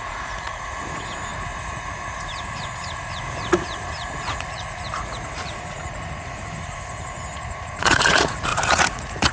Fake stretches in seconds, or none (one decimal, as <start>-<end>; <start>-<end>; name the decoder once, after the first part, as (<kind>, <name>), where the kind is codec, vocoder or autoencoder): 0.0-9.3 (vocoder, Vocos)